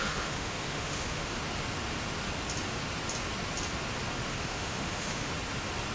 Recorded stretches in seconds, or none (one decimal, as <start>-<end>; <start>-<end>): 1.4-4.3; 5.3-5.9